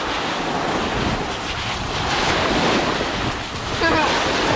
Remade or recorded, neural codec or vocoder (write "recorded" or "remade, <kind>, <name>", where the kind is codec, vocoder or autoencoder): recorded